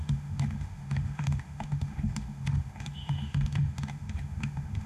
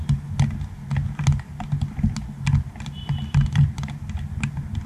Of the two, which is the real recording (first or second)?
second